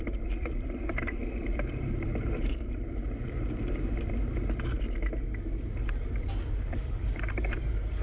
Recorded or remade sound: remade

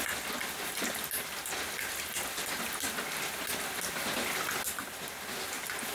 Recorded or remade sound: recorded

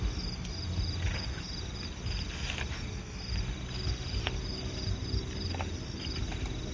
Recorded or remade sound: recorded